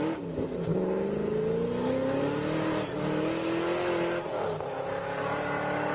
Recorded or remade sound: recorded